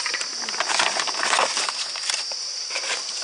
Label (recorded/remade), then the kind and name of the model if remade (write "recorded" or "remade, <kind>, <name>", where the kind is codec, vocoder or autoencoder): recorded